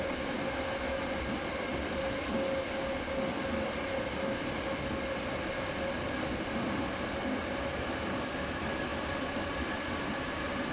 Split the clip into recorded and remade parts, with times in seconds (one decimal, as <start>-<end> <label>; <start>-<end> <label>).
0.0-10.7 recorded